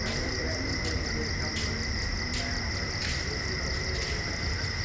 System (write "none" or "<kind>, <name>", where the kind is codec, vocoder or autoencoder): none